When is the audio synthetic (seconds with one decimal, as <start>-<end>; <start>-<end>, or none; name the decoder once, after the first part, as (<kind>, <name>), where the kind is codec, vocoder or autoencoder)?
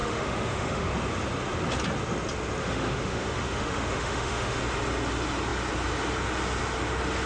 0.0-0.9 (autoencoder, DAC-VAE); 2.6-4.6